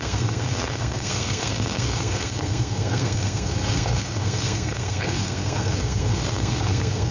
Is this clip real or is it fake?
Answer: fake